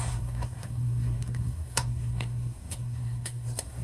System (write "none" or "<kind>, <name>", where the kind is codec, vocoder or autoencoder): codec, SNAC